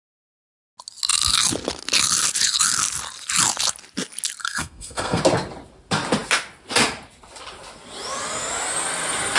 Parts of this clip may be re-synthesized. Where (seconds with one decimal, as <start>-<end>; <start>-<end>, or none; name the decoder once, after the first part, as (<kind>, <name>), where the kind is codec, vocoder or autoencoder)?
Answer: 4.4-5.2 (codec, SNAC)